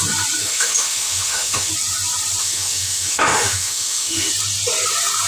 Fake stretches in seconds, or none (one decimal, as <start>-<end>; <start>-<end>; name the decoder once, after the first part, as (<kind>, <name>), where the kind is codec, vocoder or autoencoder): 0.4-1.7 (autoencoder, DAC-VAE); 2.4-4.3